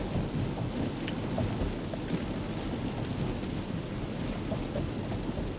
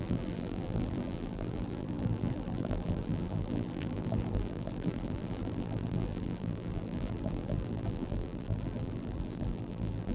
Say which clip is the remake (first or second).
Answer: second